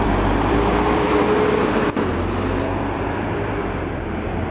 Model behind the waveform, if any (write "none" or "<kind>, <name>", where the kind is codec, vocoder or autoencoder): vocoder, BigVGAN v2